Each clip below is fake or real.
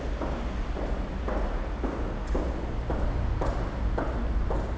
real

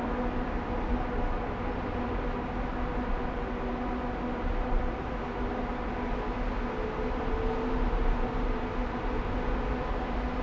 real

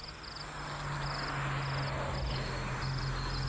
real